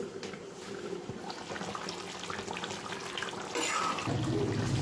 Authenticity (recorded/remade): recorded